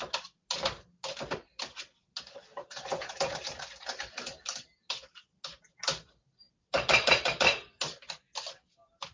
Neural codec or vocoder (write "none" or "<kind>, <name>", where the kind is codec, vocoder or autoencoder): none